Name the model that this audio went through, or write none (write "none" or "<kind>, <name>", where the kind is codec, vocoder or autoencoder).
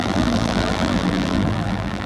vocoder, BigVGAN v2